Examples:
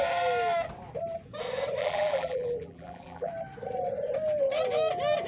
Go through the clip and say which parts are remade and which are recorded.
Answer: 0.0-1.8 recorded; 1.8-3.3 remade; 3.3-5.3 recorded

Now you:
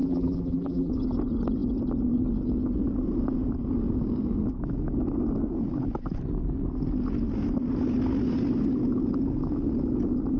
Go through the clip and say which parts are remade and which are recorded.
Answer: 0.0-0.9 remade; 0.9-10.4 recorded